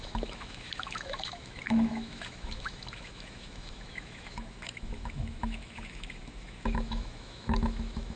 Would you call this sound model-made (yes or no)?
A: yes